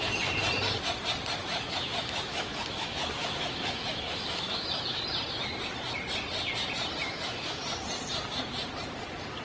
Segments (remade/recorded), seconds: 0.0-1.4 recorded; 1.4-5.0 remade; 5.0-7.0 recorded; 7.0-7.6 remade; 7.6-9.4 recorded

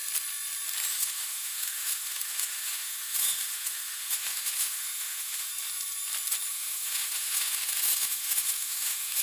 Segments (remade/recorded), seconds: 0.0-0.9 recorded; 0.9-5.5 remade; 5.5-6.5 recorded; 6.5-9.2 remade

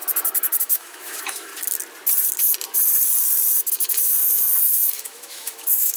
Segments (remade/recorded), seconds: 0.0-0.6 recorded; 0.6-1.5 remade; 1.5-3.7 recorded; 3.7-6.0 remade

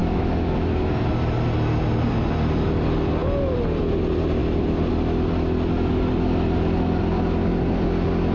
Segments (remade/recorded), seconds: 0.0-0.9 remade; 0.9-8.3 recorded

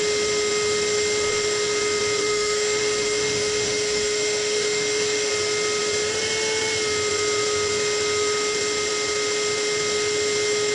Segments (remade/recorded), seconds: 0.0-2.2 recorded; 2.2-5.3 remade; 5.3-10.7 recorded

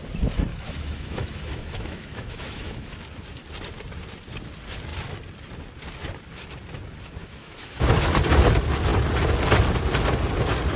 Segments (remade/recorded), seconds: 0.0-0.5 recorded; 0.5-3.0 remade; 3.0-7.2 recorded; 7.2-8.1 remade; 8.1-10.8 recorded

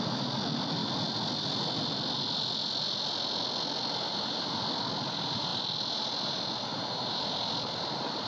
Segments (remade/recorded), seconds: 0.0-8.3 recorded

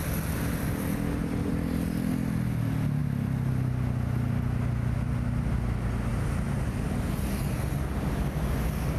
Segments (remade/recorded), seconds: 0.0-9.0 recorded